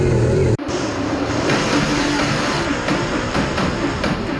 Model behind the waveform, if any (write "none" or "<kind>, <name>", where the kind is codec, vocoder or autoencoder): vocoder, BigVGAN v2